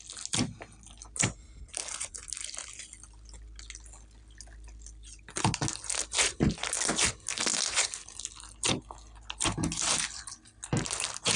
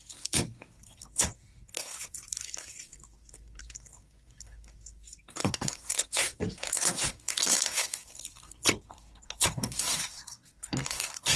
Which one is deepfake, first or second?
second